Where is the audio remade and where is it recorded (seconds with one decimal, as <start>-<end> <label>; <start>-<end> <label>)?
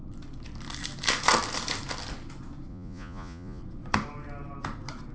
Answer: 0.0-2.7 recorded; 2.7-3.6 remade; 3.6-5.1 recorded